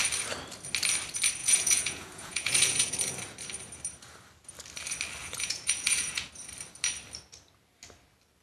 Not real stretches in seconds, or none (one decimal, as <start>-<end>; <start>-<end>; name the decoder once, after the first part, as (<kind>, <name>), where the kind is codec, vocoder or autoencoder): 1.4-2.9 (vocoder, Vocos); 5.2-6.3